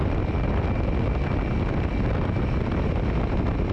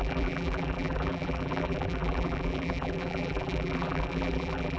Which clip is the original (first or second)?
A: first